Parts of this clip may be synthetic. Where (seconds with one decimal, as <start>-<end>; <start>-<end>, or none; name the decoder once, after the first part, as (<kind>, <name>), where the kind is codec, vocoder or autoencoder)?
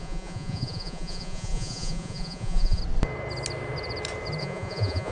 0.0-2.8 (vocoder, Vocos); 4.4-5.1